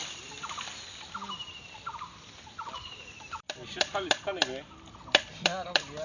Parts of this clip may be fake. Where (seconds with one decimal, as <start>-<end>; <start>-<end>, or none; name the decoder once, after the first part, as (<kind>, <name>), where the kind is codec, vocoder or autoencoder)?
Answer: 0.0-6.0 (vocoder, BigVGAN v2)